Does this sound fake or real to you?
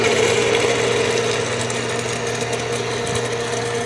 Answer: real